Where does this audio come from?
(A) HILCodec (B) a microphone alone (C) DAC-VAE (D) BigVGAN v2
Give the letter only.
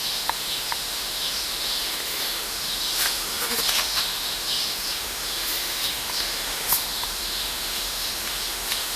C